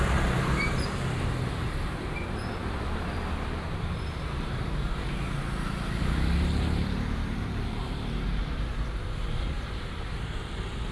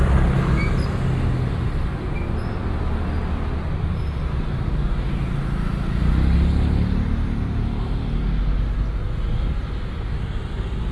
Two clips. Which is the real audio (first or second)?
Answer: second